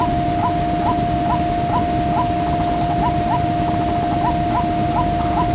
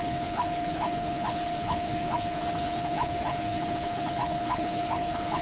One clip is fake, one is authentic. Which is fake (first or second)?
second